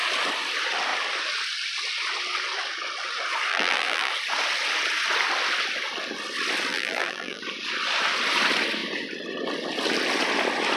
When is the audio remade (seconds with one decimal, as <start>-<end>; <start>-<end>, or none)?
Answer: 3.5-4.1; 6.7-7.4